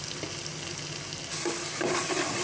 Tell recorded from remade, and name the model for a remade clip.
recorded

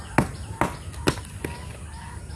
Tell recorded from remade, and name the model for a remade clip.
recorded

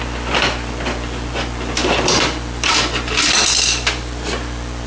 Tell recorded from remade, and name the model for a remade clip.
recorded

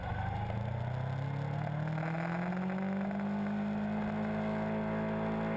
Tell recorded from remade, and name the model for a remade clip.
recorded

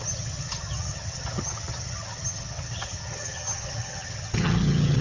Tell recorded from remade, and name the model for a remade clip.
remade, vocoder, HiFi-GAN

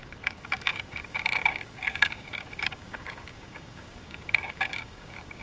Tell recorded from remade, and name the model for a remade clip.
remade, codec, DAC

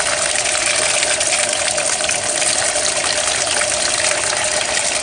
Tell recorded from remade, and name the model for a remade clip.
recorded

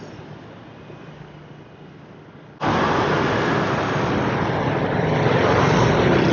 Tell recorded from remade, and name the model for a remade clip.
recorded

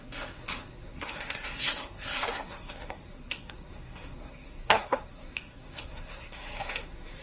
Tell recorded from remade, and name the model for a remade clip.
remade, codec, SNAC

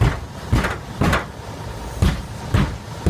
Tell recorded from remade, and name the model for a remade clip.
recorded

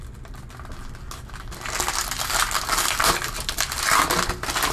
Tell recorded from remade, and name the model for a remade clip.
recorded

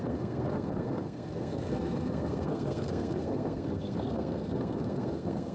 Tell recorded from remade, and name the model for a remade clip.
remade, codec, SNAC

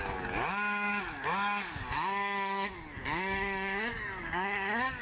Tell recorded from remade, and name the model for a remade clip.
remade, codec, DAC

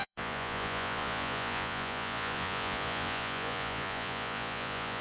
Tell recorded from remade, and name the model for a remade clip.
remade, vocoder, Vocos